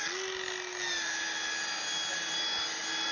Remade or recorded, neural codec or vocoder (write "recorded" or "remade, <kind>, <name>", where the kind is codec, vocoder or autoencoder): recorded